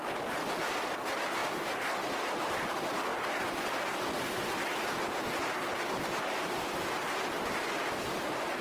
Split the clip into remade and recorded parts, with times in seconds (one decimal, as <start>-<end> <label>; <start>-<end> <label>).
0.0-8.6 recorded